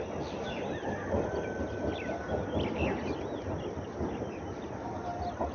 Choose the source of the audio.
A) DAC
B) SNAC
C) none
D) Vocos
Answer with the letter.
C